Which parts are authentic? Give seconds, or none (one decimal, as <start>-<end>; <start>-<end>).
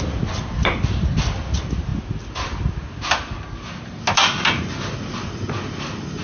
0.0-6.2